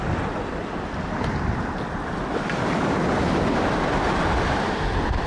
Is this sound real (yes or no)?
yes